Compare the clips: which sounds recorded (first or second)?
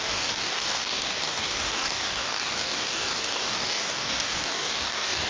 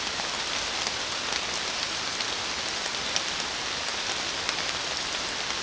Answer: second